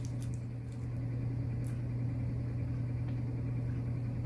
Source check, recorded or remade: recorded